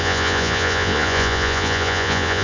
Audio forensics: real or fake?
fake